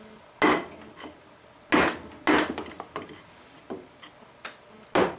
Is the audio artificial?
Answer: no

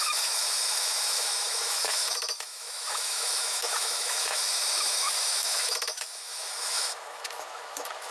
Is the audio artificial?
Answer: yes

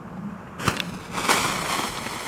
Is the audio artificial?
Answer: yes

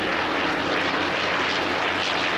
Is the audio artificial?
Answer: no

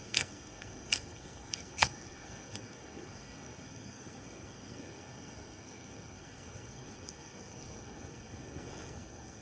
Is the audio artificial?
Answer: yes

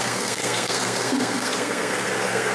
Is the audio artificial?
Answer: yes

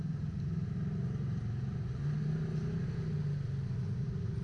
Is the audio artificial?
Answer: no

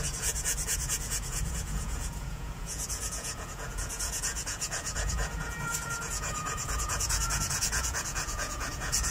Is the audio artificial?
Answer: yes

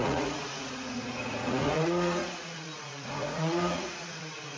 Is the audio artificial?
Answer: yes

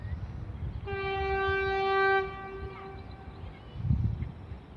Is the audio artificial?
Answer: no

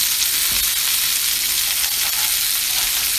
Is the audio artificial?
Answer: no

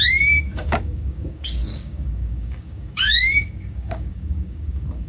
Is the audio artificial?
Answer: yes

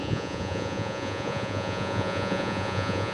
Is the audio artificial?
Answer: yes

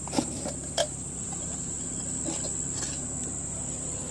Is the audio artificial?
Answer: no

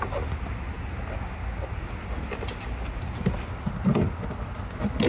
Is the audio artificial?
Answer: no